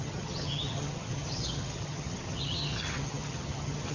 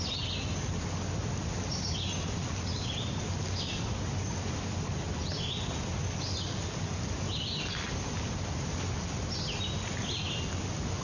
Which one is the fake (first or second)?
first